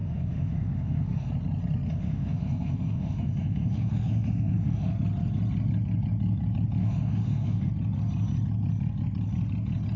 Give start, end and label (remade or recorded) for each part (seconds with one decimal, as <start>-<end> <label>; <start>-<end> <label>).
0.0-1.3 remade; 1.3-1.9 recorded; 1.9-4.9 remade; 4.9-6.8 recorded; 6.8-7.7 remade; 7.7-10.0 recorded